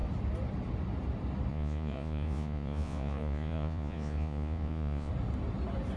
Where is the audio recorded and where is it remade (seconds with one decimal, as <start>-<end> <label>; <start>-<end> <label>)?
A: 0.0-1.5 recorded; 1.5-5.1 remade; 5.1-6.0 recorded